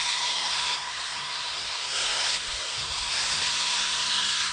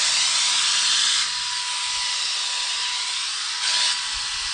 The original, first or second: second